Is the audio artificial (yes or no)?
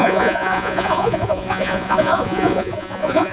yes